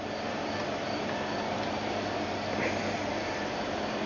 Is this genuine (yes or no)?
no